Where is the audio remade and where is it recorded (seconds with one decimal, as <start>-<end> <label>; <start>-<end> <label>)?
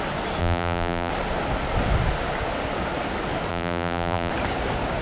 0.0-0.4 recorded; 0.4-1.1 remade; 1.1-3.5 recorded; 3.5-4.3 remade; 4.3-5.0 recorded